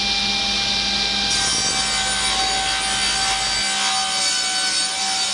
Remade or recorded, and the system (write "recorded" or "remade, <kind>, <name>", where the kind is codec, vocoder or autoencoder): recorded